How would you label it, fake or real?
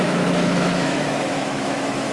fake